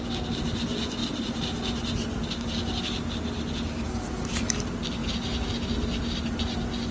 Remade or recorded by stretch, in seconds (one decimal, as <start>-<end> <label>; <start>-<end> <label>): 0.0-6.9 recorded